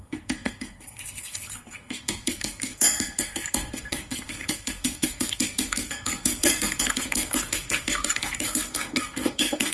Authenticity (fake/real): fake